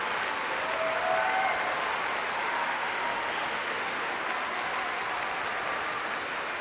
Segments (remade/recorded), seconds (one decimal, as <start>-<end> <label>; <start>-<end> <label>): 0.0-2.4 recorded; 2.4-4.1 remade; 4.1-6.6 recorded